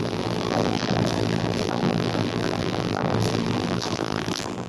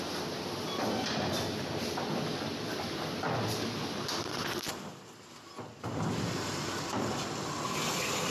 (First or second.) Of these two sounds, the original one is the second